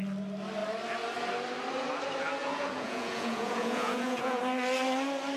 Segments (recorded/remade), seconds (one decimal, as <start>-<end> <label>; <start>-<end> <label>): 0.0-2.4 recorded; 2.4-4.4 remade; 4.4-5.4 recorded